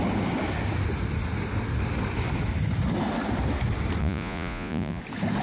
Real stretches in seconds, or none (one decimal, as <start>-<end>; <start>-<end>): 0.0-4.0; 5.0-5.4